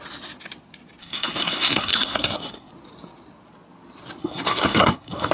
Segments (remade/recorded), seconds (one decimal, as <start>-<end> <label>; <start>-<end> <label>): 0.0-1.0 recorded; 1.0-2.7 remade; 2.7-4.2 recorded; 4.2-5.3 remade